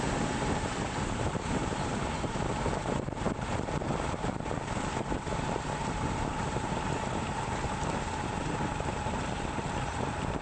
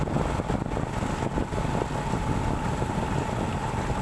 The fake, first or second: first